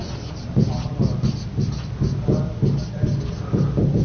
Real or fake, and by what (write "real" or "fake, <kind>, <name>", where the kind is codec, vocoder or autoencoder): real